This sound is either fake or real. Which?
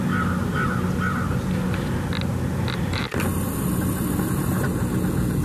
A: real